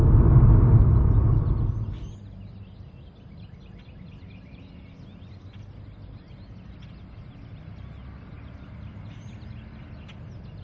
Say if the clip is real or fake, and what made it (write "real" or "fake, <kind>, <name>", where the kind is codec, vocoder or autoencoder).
real